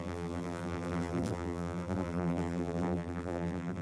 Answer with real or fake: fake